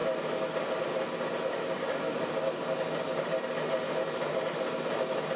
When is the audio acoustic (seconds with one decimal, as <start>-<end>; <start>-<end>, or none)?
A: 0.0-1.6; 2.1-5.4